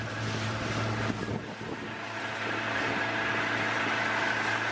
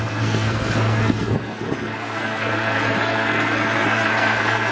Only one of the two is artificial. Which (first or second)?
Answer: second